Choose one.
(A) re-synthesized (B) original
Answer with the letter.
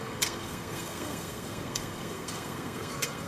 A